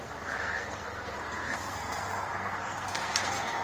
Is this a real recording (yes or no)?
no